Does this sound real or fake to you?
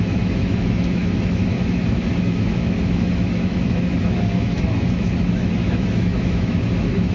fake